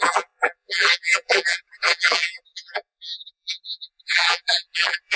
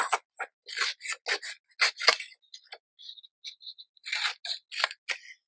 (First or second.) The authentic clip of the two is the second